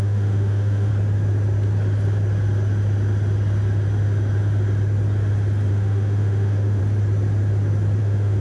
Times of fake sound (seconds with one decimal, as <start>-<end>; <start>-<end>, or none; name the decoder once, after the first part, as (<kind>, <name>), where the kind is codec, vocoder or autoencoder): 0.0-0.9 (autoencoder, DAC-VAE); 5.7-6.8; 8.0-8.4